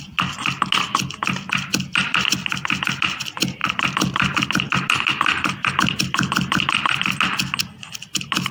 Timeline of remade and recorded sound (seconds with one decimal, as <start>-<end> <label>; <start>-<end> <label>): 0.0-8.5 recorded